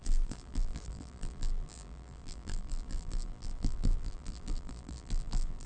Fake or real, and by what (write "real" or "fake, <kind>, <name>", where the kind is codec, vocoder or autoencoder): fake, vocoder, BigVGAN v2